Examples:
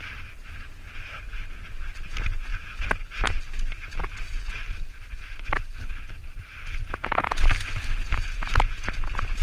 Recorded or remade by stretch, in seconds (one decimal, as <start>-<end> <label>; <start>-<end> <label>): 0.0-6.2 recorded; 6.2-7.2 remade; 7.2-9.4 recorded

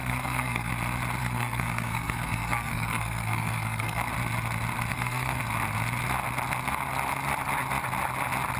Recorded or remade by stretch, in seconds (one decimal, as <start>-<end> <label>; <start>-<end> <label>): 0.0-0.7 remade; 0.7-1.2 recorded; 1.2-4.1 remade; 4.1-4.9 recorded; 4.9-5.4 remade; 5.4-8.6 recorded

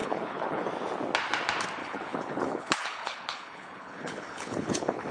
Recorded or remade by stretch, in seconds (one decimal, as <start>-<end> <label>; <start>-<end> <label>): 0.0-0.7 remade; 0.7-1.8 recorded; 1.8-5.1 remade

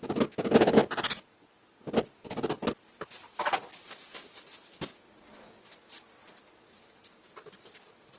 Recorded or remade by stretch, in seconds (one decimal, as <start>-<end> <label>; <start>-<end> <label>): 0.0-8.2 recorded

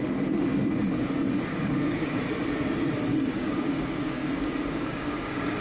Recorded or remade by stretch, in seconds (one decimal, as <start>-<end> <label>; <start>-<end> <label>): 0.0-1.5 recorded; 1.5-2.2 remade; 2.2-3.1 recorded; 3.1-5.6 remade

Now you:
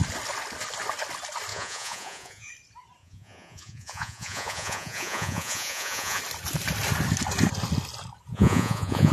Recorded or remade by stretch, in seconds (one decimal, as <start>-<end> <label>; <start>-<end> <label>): 0.0-1.5 recorded; 1.5-2.5 remade; 2.5-3.0 recorded; 3.0-6.2 remade; 6.2-8.3 recorded; 8.3-9.1 remade

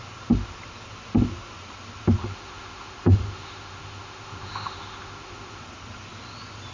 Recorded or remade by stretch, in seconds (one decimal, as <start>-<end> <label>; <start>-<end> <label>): 0.0-2.2 recorded; 2.2-5.6 remade; 5.6-6.7 recorded

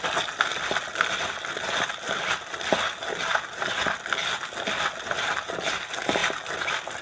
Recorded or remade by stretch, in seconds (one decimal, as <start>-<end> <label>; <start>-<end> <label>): 0.0-0.5 remade; 0.5-3.6 recorded; 3.6-6.2 remade; 6.2-7.0 recorded